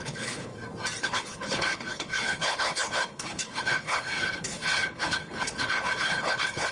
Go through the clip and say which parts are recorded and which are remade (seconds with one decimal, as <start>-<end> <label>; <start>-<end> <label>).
0.0-0.5 remade; 0.5-1.0 recorded; 1.0-6.7 remade